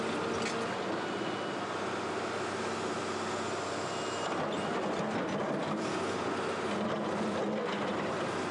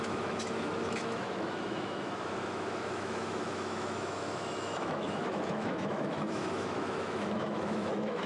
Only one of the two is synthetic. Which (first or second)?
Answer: second